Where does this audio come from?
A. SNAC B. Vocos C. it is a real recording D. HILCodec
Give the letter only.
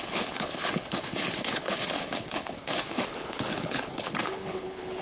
D